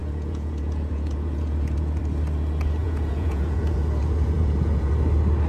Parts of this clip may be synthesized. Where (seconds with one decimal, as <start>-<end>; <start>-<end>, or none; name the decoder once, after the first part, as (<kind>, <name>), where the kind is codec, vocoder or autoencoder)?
0.0-2.0 (vocoder, Vocos); 2.8-4.9